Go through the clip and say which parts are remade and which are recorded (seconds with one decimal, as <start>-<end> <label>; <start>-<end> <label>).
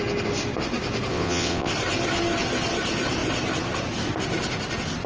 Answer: 0.0-1.1 recorded; 1.1-1.7 remade; 1.7-5.1 recorded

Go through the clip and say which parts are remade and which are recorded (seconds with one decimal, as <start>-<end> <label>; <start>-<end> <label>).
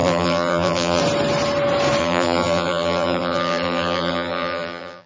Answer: 0.0-1.0 remade; 1.0-2.0 recorded; 2.0-5.1 remade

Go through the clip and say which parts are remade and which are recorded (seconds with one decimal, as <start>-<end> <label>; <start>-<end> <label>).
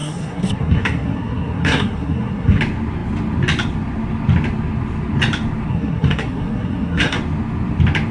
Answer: 0.0-2.6 remade; 2.6-5.7 recorded; 5.7-7.2 remade; 7.2-8.1 recorded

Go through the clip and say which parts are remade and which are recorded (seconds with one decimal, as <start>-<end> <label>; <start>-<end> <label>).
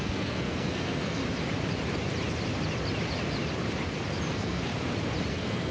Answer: 0.0-1.2 remade; 1.2-4.3 recorded; 4.3-4.7 remade; 4.7-5.3 recorded; 5.3-5.7 remade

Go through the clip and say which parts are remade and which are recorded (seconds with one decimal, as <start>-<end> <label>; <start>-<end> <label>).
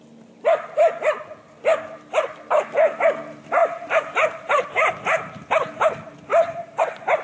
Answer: 0.0-3.6 recorded; 3.6-4.9 remade; 4.9-6.3 recorded; 6.3-6.8 remade; 6.8-7.2 recorded